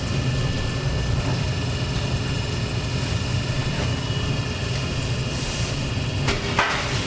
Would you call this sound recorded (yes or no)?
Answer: yes